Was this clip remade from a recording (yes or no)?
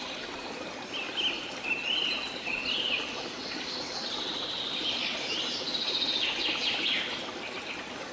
no